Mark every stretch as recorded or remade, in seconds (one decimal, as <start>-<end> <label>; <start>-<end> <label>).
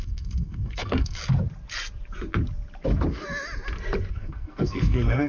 0.0-1.2 remade; 1.2-4.1 recorded; 4.1-5.3 remade